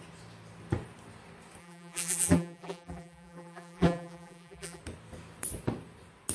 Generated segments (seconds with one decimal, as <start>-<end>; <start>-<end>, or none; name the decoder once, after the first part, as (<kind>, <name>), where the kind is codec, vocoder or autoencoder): 1.6-4.8 (vocoder, BigVGAN v2)